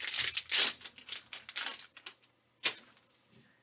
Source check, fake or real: real